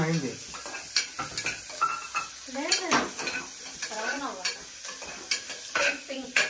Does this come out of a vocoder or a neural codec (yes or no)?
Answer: no